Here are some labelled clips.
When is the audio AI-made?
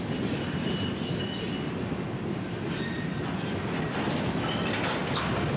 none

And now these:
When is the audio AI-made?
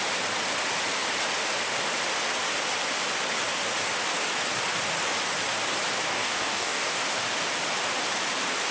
6.1-7.0 (codec, DAC)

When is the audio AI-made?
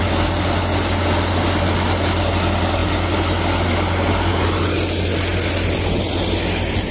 none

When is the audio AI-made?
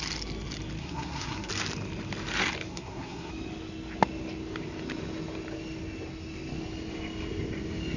0.8-1.5 (codec, SNAC); 2.7-3.3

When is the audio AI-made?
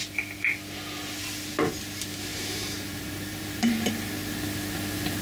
2.3-3.9 (vocoder, BigVGAN v2)